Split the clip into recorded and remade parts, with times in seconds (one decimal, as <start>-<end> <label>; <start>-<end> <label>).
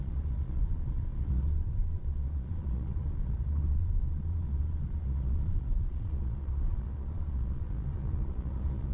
0.0-8.9 remade